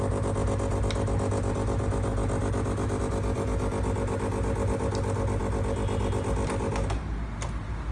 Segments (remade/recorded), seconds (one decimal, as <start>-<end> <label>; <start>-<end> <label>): 0.0-7.9 recorded